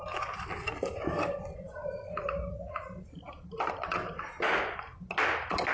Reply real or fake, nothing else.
real